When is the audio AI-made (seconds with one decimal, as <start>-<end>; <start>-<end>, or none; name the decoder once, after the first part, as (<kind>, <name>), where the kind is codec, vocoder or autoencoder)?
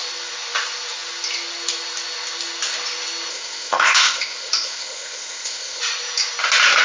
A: 3.3-5.8 (codec, ZipCodec)